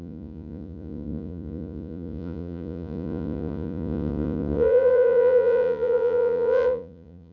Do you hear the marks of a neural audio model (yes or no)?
yes